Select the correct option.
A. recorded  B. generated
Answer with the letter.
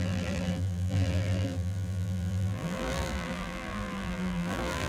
B